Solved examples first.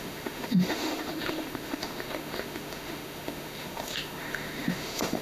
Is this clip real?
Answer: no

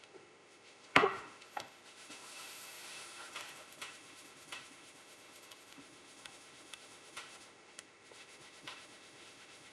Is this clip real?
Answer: no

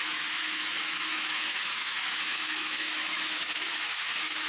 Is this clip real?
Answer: no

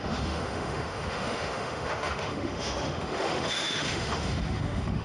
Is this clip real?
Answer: no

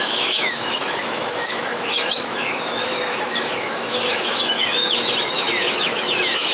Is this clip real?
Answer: no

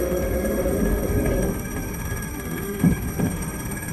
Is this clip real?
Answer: no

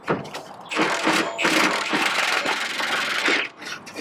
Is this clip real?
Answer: yes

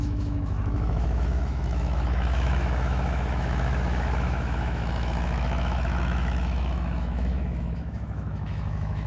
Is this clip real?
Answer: no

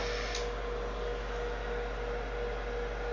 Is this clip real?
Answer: yes